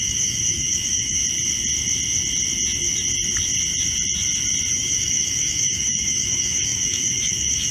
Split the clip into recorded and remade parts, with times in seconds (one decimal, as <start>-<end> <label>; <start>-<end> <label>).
0.0-1.2 remade; 1.2-4.7 recorded; 4.7-7.7 remade